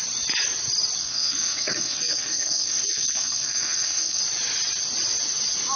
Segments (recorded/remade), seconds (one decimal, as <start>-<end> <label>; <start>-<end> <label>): 0.0-1.0 recorded; 1.0-4.2 remade; 4.2-5.8 recorded